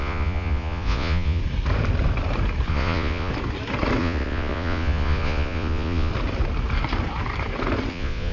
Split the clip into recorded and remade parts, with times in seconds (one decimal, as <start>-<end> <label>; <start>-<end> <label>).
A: 0.0-1.4 remade; 1.4-2.7 recorded; 2.7-3.3 remade; 3.3-4.0 recorded; 4.0-6.1 remade; 6.1-7.9 recorded; 7.9-8.3 remade